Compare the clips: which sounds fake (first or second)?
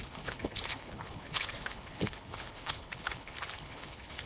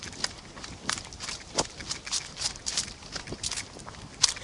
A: first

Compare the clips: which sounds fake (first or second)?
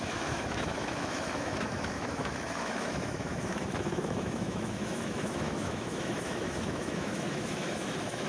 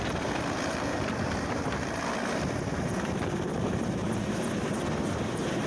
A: first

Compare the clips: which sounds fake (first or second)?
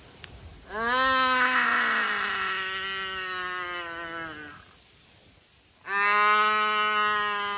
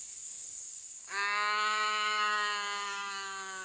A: second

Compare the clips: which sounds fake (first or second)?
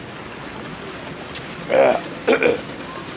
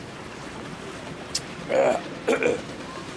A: second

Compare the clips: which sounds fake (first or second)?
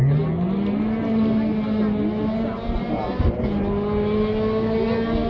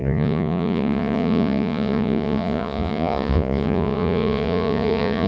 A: second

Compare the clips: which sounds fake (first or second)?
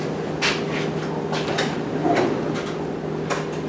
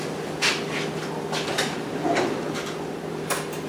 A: second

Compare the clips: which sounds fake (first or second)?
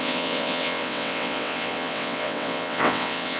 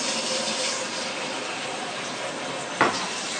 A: first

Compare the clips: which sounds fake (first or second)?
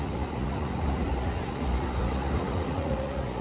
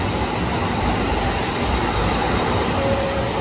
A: first